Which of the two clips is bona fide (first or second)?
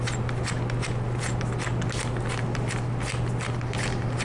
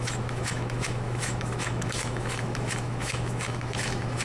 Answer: first